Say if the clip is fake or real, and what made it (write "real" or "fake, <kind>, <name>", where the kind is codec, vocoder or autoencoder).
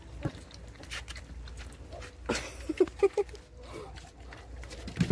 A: real